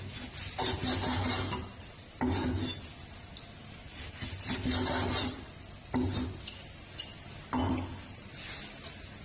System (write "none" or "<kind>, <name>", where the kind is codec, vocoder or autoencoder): none